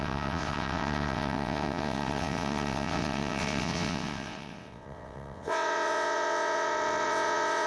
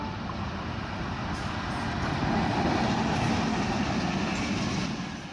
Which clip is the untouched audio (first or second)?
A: second